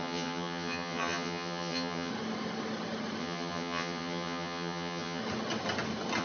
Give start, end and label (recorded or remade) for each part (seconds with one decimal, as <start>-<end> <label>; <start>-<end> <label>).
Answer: 0.0-2.1 remade; 2.1-3.2 recorded; 3.2-5.2 remade; 5.2-6.2 recorded